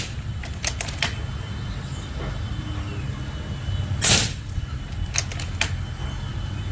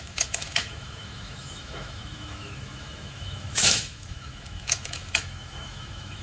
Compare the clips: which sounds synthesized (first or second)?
second